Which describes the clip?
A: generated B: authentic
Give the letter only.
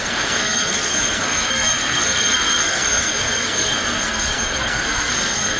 A